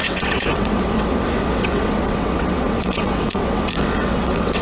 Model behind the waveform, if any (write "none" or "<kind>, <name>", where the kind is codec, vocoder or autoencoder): vocoder, WaveNeXt